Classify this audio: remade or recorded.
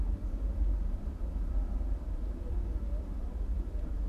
recorded